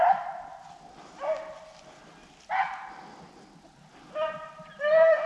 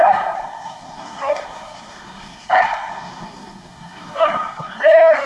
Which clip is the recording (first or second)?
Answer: first